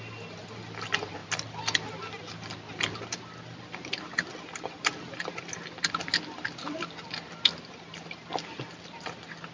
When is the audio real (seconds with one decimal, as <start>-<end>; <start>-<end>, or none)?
0.0-9.5